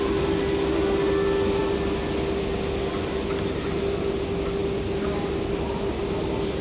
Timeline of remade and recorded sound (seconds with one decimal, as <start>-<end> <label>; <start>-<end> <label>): 0.0-6.6 recorded